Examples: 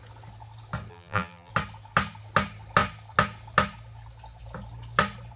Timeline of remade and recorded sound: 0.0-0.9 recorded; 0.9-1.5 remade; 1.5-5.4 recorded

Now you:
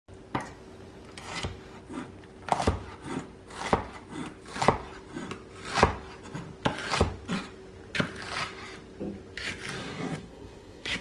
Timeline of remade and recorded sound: 0.0-9.8 recorded; 9.8-11.0 remade

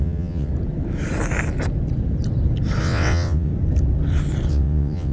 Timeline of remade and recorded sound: 0.0-0.5 remade; 0.5-2.8 recorded; 2.8-3.5 remade; 3.5-4.5 recorded; 4.5-5.1 remade

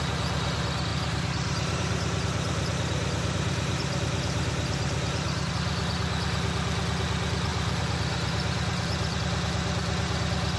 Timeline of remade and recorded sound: 0.0-0.9 recorded; 0.9-5.5 remade; 5.5-7.5 recorded; 7.5-9.2 remade; 9.2-10.6 recorded

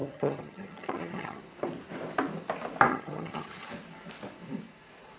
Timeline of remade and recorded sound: 0.0-1.4 remade; 1.4-2.9 recorded; 2.9-3.7 remade; 3.7-5.2 recorded